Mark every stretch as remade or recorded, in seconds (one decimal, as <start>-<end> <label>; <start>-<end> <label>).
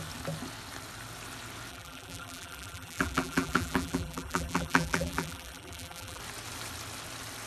0.0-1.7 recorded; 1.7-6.2 remade; 6.2-7.5 recorded